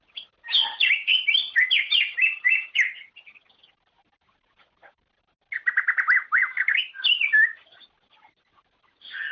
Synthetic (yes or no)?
no